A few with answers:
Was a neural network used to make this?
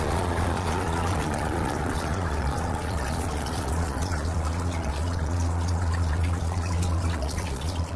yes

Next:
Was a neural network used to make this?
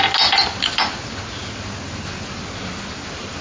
no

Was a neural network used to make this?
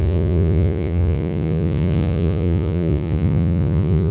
yes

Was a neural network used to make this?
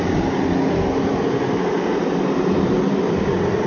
no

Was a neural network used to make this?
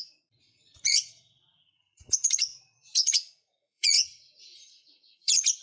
yes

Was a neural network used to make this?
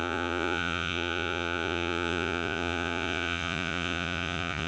yes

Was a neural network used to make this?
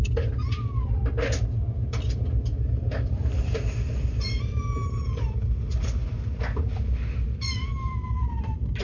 no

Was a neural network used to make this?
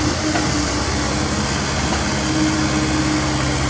no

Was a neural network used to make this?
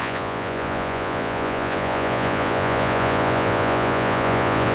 yes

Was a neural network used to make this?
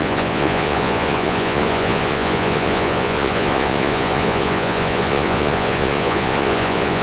yes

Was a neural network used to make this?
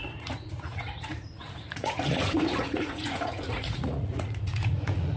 yes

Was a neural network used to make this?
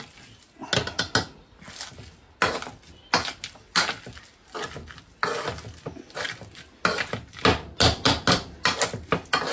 no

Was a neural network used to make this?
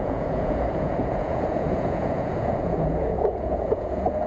yes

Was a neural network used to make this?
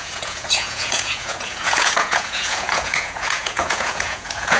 yes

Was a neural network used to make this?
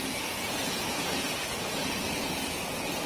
yes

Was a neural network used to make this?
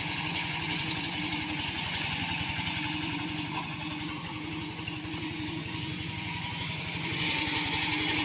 yes